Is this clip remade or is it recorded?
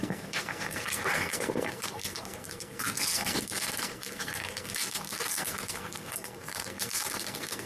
remade